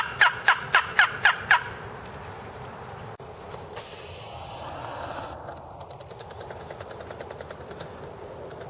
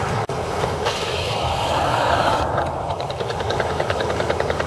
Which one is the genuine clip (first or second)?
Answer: first